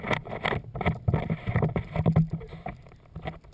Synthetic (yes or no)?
no